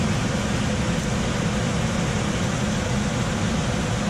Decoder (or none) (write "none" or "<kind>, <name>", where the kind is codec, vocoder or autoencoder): none